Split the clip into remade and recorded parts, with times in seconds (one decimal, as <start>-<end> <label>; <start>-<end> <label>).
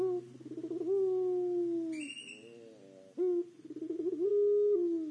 0.0-5.1 recorded